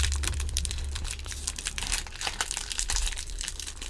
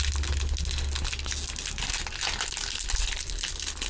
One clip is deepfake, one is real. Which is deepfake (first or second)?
first